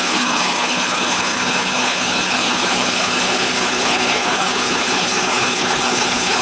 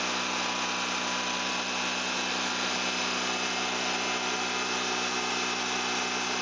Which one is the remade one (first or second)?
first